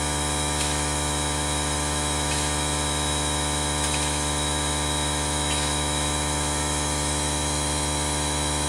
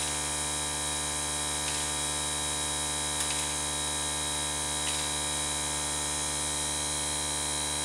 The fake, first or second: first